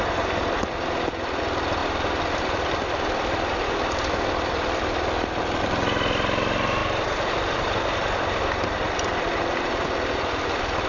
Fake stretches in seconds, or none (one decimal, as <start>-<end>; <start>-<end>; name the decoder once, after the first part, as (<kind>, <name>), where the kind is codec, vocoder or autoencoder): 1.8-5.4 (vocoder, BigVGAN v2); 6.8-9.7